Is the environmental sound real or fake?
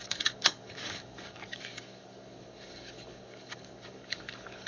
fake